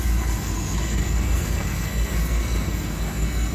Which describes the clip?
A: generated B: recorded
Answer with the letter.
A